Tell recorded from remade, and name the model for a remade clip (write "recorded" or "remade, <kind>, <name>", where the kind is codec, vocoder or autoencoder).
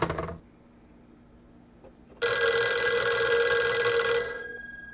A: recorded